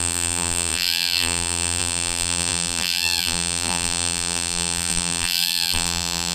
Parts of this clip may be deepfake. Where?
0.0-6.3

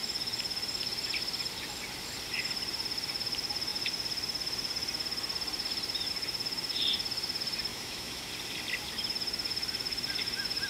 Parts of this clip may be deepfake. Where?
7.7-8.3

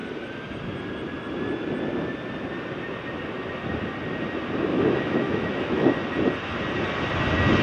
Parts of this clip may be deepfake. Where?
4.7-5.9

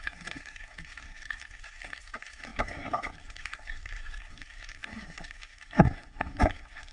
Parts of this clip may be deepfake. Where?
0.0-6.9